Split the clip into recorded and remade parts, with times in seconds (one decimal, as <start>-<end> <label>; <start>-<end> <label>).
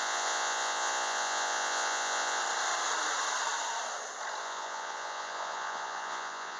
0.0-2.4 remade; 2.4-4.4 recorded; 4.4-6.6 remade